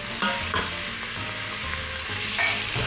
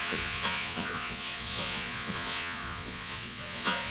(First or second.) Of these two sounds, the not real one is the second